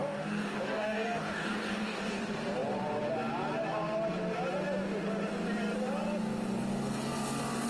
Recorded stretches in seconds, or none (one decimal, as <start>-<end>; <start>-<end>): 2.2-7.7